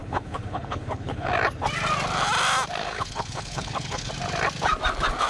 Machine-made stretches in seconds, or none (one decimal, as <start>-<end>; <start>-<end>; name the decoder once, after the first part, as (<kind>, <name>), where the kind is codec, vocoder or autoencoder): 0.0-1.3 (codec, HILCodec); 2.8-4.1